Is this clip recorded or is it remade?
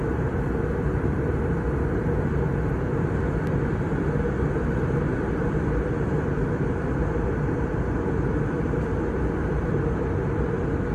recorded